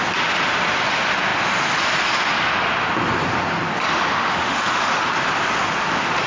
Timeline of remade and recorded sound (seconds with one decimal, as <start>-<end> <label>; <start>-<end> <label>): 0.0-4.1 recorded; 4.1-4.9 remade; 4.9-6.3 recorded